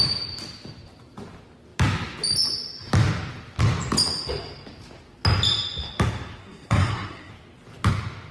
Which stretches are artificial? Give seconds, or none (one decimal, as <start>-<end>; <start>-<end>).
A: 6.4-7.3